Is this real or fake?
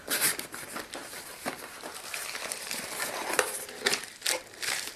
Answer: fake